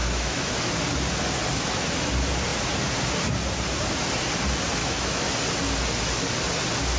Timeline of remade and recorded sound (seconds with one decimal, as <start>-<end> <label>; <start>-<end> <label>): 0.0-0.7 remade; 0.7-4.8 recorded; 4.8-5.3 remade; 5.3-7.0 recorded